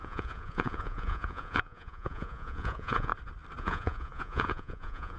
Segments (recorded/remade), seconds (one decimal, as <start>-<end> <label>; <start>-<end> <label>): 0.0-3.1 remade; 3.1-3.6 recorded; 3.6-5.2 remade